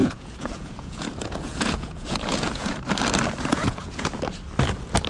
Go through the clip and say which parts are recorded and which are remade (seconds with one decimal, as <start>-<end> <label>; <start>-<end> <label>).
0.0-2.8 remade; 2.8-3.5 recorded; 3.5-4.1 remade; 4.1-5.1 recorded